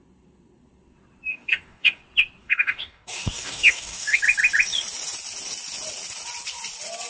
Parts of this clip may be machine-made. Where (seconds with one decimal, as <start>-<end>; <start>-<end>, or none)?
1.3-2.0; 2.4-4.2